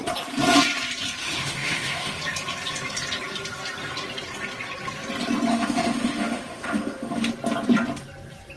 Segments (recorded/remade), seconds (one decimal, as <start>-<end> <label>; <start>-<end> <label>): 0.0-1.2 recorded; 1.2-2.2 remade; 2.2-5.5 recorded; 5.5-7.3 remade; 7.3-8.6 recorded